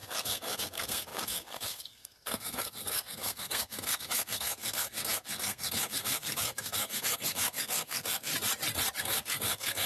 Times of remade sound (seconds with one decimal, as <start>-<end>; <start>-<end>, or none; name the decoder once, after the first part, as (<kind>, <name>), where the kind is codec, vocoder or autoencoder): 0.0-8.3 (codec, SNAC); 9.0-9.9